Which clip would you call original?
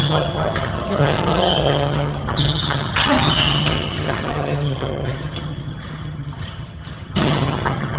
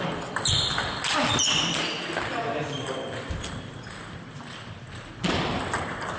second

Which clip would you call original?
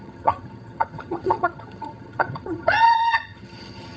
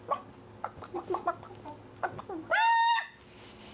second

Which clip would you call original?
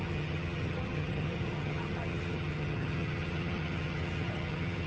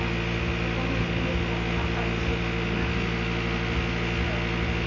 second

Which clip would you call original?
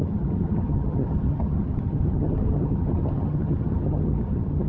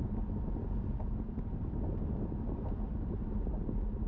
second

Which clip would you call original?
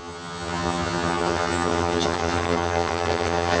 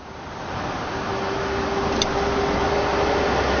second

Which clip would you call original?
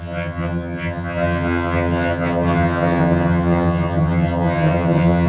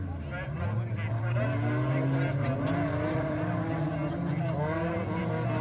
second